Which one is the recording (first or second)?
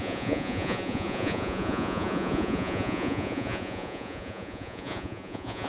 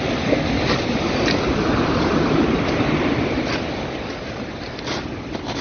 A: second